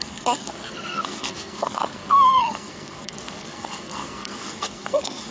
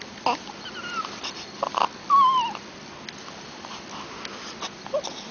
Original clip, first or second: second